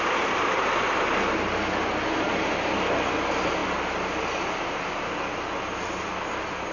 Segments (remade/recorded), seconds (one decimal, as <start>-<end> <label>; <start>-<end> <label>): 0.0-6.7 recorded